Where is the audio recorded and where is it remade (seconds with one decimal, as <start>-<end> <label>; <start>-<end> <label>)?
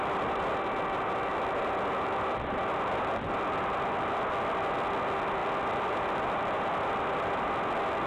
0.0-5.4 recorded; 5.4-7.5 remade; 7.5-8.1 recorded